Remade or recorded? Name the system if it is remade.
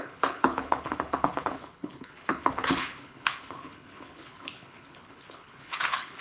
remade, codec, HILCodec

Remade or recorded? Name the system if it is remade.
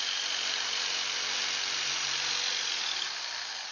recorded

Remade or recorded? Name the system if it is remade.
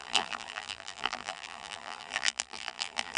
remade, vocoder, BigVGAN v2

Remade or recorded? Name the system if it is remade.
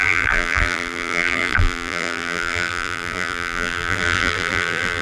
remade, vocoder, BigVGAN v2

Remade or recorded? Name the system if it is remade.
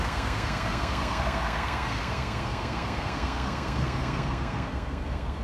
remade, codec, SNAC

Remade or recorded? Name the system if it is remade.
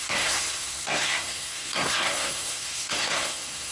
remade, codec, SNAC